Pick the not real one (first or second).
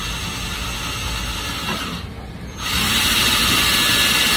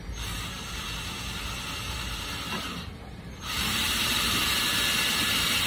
second